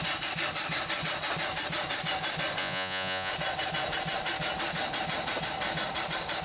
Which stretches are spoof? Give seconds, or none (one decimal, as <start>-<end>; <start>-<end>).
2.6-3.3